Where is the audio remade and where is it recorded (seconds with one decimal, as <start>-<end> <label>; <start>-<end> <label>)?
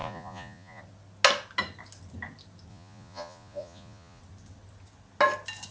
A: 0.0-0.8 remade; 0.8-2.7 recorded; 2.7-4.2 remade; 4.2-5.7 recorded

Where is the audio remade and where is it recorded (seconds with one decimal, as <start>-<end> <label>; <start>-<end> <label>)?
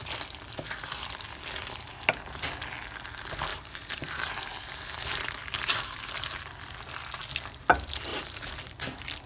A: 0.0-3.5 recorded; 3.5-4.2 remade; 4.2-5.4 recorded; 5.4-6.0 remade; 6.0-8.1 recorded; 8.1-8.7 remade; 8.7-9.3 recorded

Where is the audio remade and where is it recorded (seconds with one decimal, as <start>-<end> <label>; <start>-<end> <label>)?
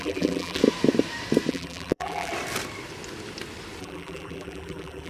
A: 0.0-0.6 remade; 0.6-1.5 recorded; 1.5-2.3 remade; 2.3-3.8 recorded; 3.8-5.1 remade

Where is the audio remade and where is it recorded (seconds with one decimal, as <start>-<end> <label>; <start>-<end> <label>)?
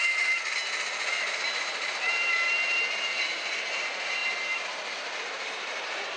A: 0.0-0.6 remade; 0.6-1.1 recorded; 1.1-6.2 remade